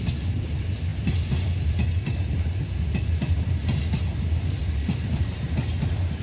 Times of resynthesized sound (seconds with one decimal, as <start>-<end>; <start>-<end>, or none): none